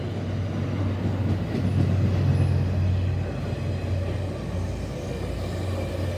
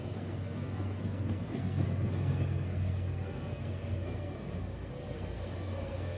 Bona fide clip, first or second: first